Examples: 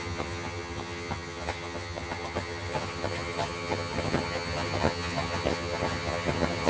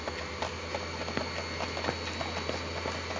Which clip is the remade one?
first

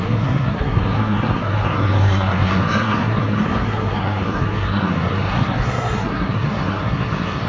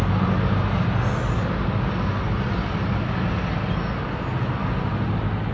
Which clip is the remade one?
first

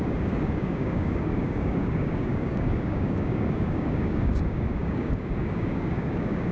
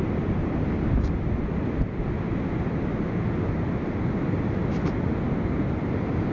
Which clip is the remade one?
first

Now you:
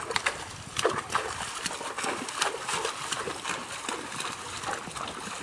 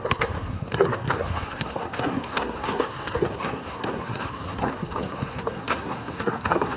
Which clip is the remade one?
second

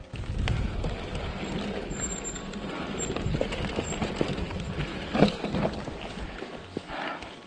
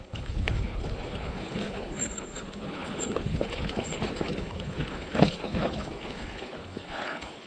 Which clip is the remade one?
second